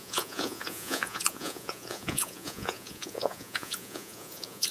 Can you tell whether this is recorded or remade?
remade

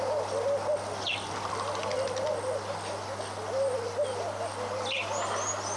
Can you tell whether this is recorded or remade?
recorded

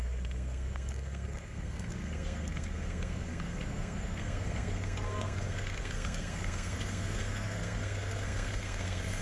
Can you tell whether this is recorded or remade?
remade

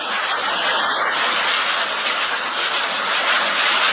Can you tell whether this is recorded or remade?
recorded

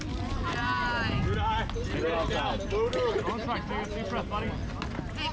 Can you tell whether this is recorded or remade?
recorded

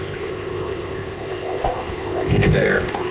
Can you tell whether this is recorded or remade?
remade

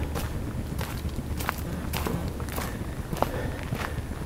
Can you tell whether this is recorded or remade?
recorded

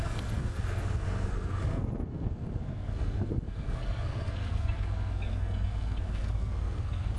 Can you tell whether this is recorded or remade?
remade